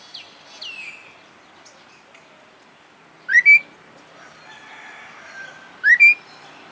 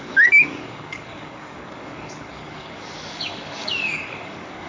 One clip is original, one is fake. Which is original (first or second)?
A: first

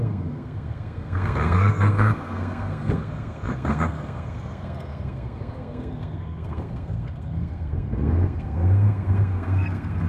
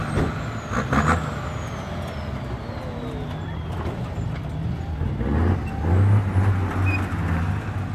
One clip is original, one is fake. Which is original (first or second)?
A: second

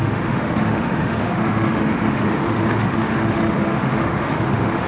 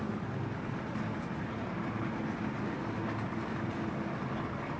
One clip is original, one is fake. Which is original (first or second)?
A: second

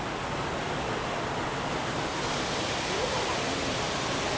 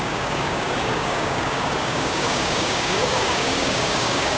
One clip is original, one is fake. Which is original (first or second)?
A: first